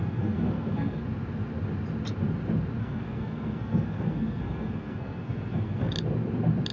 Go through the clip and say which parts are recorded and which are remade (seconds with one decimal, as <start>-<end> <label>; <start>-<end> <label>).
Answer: 0.0-1.0 remade; 1.0-2.8 recorded; 2.8-5.9 remade; 5.9-6.7 recorded